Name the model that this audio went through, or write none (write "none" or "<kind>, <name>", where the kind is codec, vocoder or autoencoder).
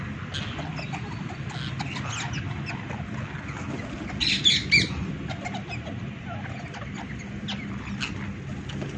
none